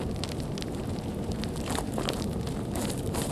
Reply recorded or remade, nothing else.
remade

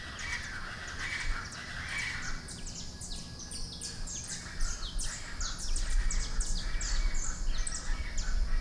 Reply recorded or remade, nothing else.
recorded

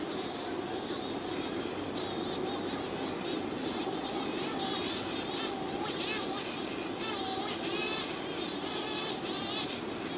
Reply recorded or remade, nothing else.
recorded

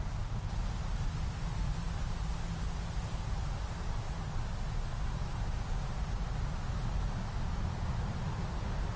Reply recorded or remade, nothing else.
recorded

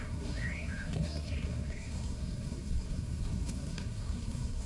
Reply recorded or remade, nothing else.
remade